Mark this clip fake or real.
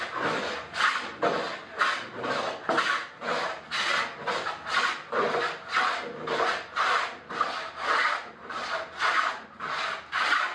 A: real